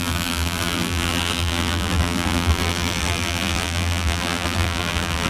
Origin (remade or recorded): remade